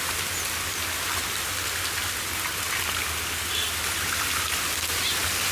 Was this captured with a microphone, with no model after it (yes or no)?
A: yes